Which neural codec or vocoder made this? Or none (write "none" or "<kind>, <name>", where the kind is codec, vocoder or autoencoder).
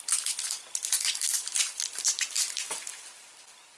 none